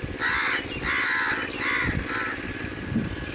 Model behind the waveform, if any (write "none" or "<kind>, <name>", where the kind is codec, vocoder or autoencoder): none